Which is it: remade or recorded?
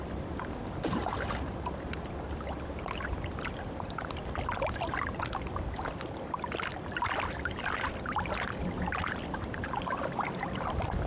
remade